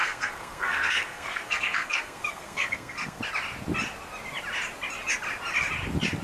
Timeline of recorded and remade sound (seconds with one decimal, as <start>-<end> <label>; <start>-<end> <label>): 0.0-3.2 remade; 3.2-6.2 recorded